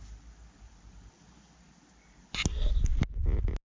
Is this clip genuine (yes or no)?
yes